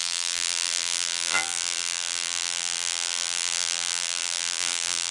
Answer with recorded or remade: remade